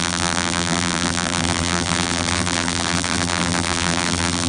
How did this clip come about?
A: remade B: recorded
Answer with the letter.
A